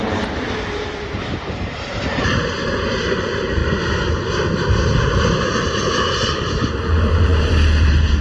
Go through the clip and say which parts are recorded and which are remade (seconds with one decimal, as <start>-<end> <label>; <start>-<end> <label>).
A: 0.0-2.6 remade; 2.6-3.1 recorded; 3.1-3.6 remade; 3.6-4.5 recorded; 4.5-8.2 remade